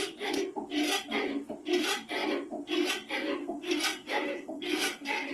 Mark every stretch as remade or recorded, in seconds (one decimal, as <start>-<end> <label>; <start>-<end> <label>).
0.0-3.4 recorded; 3.4-5.3 remade